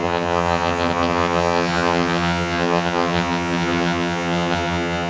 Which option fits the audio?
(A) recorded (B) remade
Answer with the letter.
B